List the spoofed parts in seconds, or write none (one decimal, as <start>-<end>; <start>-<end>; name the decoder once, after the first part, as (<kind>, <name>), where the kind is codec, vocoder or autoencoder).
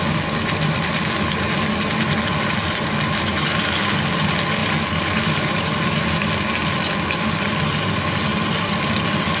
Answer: 4.6-5.5 (vocoder, BigVGAN v2); 8.3-9.0